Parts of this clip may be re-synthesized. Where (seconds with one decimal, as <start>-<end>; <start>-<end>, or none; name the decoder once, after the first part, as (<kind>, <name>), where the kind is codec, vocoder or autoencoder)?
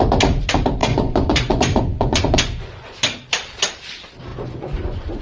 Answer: 0.8-3.0 (vocoder, Vocos); 4.3-5.2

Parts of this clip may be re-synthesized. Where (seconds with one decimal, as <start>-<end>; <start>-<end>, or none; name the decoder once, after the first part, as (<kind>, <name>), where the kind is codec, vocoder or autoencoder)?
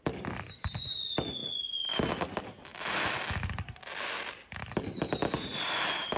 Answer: none